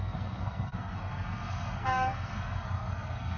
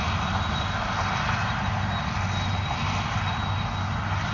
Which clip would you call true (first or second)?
second